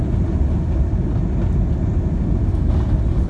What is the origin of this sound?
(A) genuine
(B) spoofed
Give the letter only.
A